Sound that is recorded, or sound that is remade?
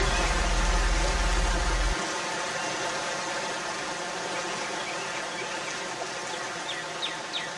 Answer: recorded